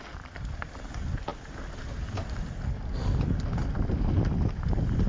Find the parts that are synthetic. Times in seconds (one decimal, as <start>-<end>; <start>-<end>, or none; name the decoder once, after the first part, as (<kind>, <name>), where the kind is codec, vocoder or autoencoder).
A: none